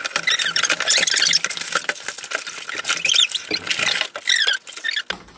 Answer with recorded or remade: recorded